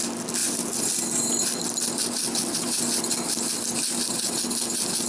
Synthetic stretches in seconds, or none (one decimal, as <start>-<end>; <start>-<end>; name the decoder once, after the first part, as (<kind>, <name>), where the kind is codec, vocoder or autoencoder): 0.4-3.5 (vocoder, BigVGAN v2)